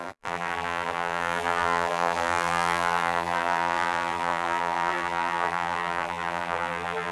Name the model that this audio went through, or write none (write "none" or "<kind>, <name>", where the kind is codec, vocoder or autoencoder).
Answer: vocoder, BigVGAN v2